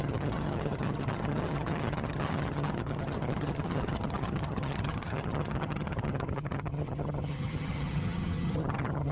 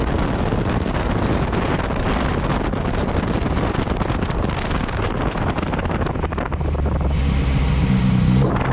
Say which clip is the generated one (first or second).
first